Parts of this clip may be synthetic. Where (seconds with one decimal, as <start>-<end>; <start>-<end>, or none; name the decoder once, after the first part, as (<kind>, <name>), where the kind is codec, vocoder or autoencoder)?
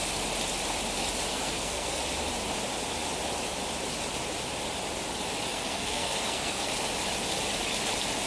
1.3-2.0 (codec, SNAC); 5.5-6.7